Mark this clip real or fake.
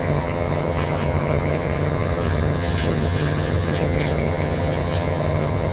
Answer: fake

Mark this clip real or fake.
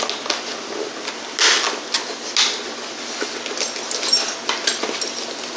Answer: real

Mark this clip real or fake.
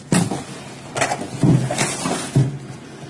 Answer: real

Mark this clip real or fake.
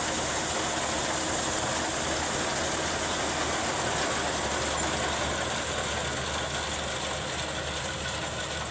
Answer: real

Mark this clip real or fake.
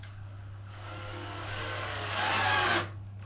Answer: fake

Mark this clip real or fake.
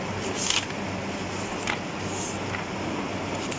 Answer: real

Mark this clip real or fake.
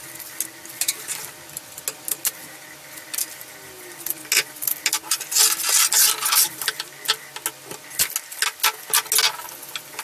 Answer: real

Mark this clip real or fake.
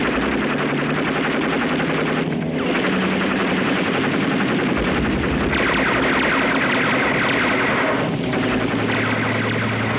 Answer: real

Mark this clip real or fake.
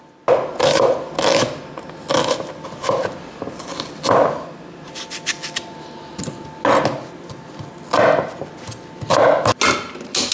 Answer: real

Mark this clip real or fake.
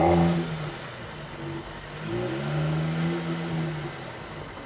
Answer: real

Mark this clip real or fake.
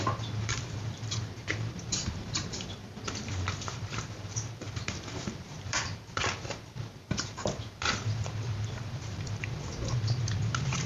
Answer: fake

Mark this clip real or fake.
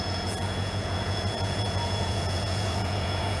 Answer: fake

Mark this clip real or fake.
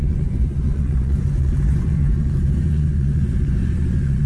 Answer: fake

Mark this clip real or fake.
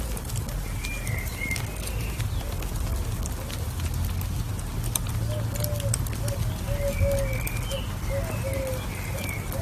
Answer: real